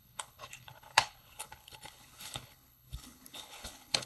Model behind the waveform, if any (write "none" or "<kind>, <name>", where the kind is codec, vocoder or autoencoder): codec, HILCodec